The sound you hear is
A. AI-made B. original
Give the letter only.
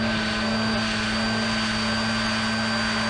B